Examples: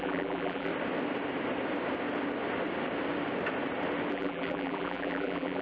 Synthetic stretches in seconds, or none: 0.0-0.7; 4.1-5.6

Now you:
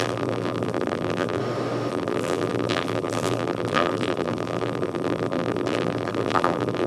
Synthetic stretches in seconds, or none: 0.0-1.4; 1.9-6.9

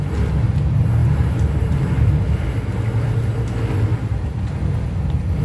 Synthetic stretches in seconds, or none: 1.0-1.8; 3.9-4.4

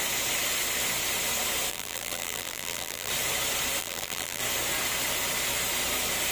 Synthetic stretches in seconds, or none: 1.7-3.1; 3.8-4.4

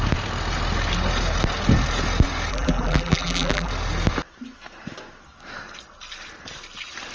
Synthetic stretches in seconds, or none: 2.5-3.7

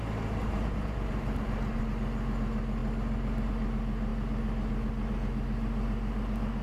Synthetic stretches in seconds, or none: 0.4-1.8